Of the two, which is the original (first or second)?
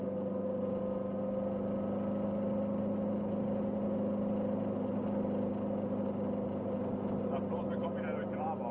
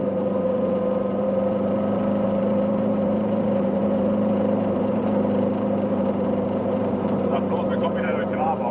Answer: first